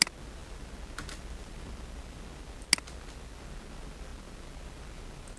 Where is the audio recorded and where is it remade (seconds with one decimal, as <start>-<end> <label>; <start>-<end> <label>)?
0.0-5.4 recorded